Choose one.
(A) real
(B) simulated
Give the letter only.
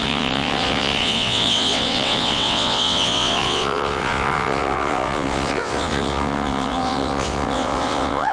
B